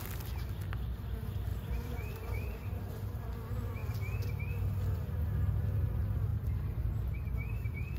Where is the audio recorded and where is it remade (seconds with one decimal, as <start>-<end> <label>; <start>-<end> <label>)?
0.0-1.5 recorded; 1.5-3.2 remade; 3.2-6.3 recorded; 6.3-8.0 remade